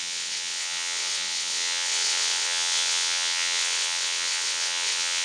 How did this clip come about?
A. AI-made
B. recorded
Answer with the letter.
A